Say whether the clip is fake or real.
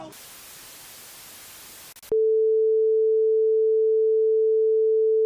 real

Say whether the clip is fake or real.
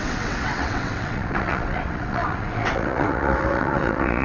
fake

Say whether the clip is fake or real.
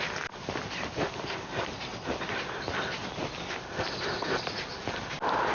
real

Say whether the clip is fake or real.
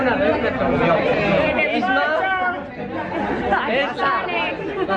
real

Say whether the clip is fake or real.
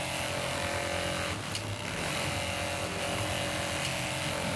real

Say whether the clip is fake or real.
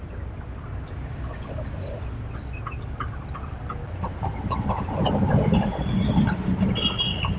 real